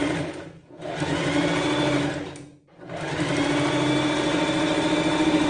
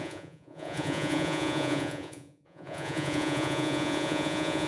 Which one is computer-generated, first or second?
second